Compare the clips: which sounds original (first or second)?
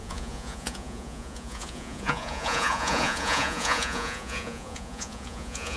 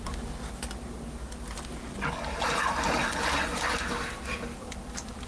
second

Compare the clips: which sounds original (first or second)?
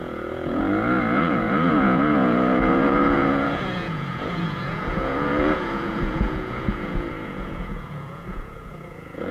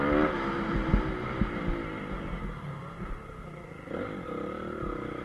second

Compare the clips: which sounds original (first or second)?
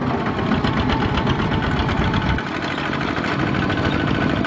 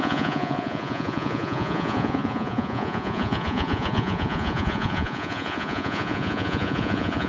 first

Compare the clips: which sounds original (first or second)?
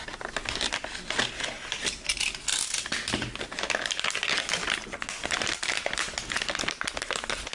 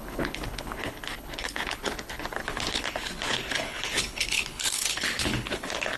first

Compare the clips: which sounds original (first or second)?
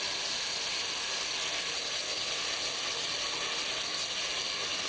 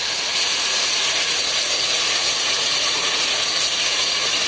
first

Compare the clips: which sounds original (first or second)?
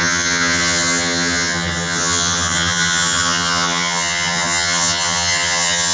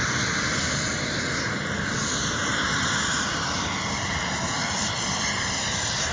second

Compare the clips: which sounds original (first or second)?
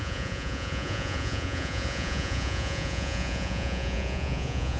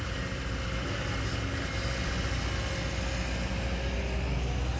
second